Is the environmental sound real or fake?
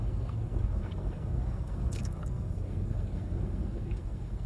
fake